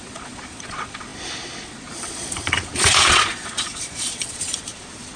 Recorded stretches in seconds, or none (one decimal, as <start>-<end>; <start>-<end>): none